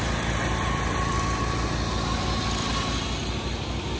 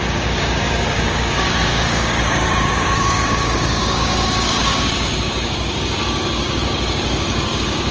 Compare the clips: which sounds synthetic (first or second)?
second